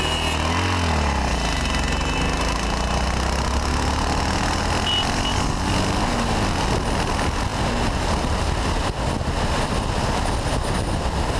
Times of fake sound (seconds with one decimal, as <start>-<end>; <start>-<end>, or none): none